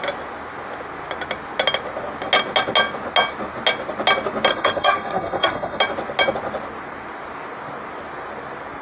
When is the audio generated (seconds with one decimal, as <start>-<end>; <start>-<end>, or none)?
4.5-5.8

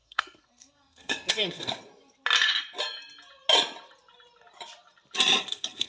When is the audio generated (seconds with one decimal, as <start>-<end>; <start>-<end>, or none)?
0.0-1.9; 5.4-5.9

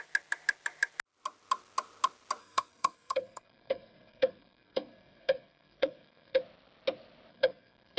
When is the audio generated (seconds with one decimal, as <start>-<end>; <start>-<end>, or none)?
2.4-6.4; 7.3-8.0

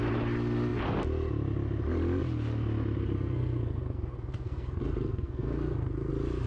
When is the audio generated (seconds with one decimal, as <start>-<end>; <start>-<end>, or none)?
3.0-6.1

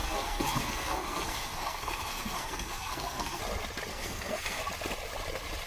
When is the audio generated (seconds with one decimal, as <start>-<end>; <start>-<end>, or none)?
0.0-3.4; 3.9-4.6

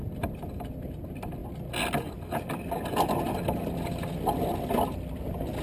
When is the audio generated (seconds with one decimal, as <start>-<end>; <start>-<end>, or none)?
none

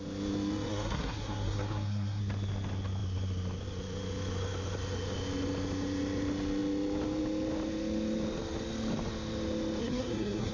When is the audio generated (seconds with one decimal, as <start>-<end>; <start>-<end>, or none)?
0.7-2.2; 9.8-10.5